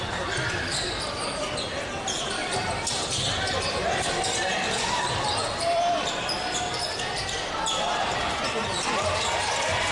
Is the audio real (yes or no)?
no